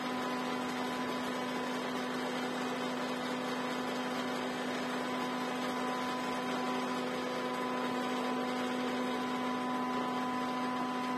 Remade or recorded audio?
recorded